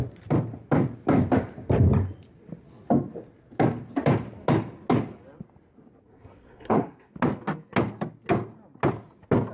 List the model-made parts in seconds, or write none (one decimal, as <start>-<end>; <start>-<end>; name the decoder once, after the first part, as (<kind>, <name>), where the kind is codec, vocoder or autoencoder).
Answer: 6.0-7.1 (codec, SNAC)